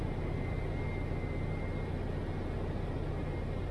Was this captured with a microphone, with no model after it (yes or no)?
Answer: yes